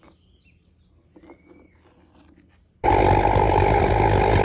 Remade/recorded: recorded